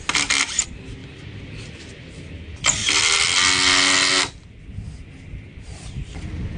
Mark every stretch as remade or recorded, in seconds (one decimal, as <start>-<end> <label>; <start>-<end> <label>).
0.0-1.0 recorded; 1.0-2.1 remade; 2.1-6.6 recorded